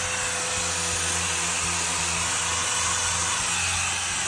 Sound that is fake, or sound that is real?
real